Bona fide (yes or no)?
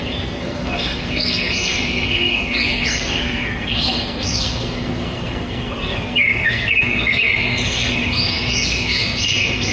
no